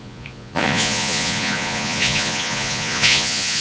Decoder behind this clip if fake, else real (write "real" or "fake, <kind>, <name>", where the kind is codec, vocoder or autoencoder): fake, vocoder, Vocos